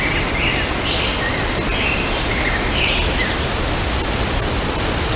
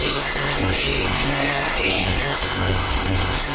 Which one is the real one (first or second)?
first